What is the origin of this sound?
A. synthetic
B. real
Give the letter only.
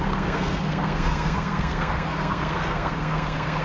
A